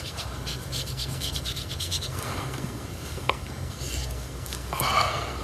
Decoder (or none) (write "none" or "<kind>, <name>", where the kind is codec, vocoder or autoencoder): codec, SNAC